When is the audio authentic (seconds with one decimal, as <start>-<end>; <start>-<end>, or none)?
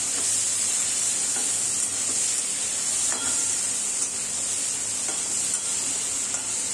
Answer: 0.0-6.7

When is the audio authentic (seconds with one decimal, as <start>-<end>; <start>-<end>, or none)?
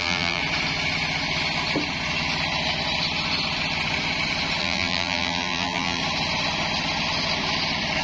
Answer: 0.4-4.6; 6.0-8.0